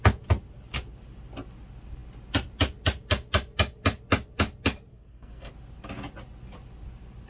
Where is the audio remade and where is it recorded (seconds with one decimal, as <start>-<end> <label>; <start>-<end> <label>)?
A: 0.0-4.9 recorded; 4.9-5.5 remade; 5.5-7.3 recorded